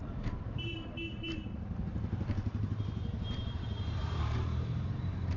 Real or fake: fake